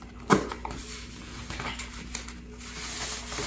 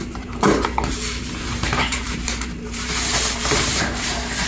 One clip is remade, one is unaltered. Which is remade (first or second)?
second